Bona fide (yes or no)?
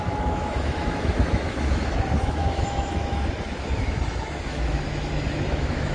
no